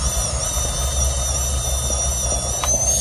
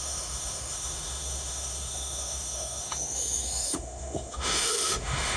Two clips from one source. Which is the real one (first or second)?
first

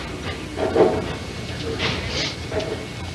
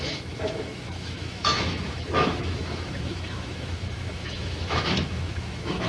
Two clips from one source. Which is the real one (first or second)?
first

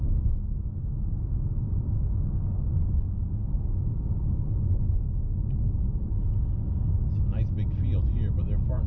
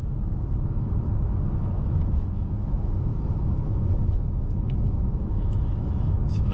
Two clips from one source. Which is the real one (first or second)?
first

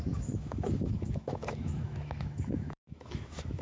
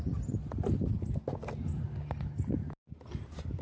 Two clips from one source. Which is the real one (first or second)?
second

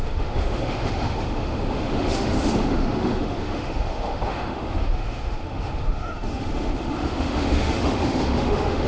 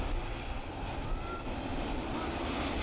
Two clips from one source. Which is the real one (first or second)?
second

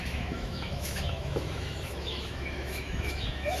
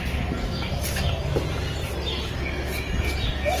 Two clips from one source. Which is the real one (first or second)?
second